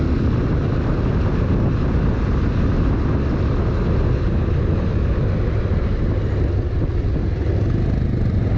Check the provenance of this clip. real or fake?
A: real